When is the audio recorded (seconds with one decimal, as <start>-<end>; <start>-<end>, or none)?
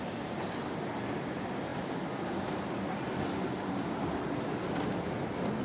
0.0-5.6